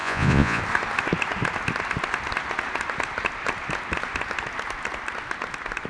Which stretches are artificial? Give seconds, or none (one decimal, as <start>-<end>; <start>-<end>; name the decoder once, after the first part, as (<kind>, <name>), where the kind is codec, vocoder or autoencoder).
0.0-0.6 (vocoder, Vocos)